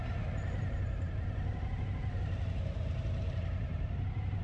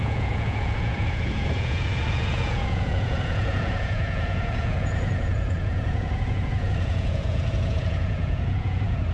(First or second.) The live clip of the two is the first